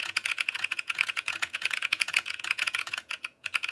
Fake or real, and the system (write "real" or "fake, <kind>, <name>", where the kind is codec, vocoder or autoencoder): fake, vocoder, Vocos